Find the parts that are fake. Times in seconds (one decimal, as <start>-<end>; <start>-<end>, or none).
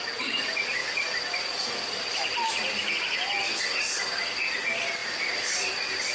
0.8-2.9; 5.0-6.1